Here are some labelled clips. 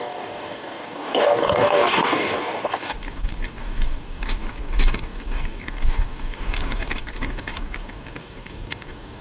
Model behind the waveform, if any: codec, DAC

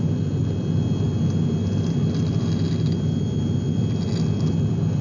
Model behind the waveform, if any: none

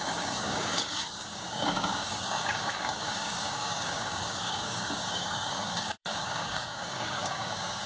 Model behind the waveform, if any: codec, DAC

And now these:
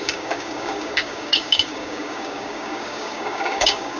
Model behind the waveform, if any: codec, DAC